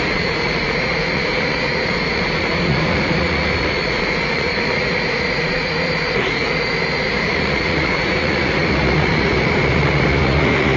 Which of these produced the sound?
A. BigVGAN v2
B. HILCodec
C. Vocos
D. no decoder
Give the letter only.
C